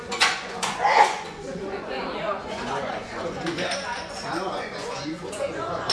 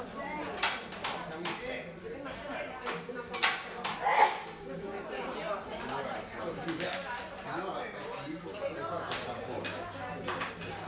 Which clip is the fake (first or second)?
first